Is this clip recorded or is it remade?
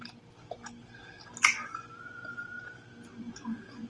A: recorded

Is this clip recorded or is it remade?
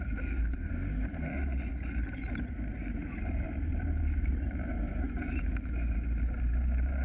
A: remade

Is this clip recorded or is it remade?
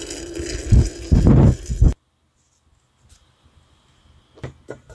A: recorded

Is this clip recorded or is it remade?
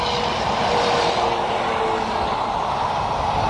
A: recorded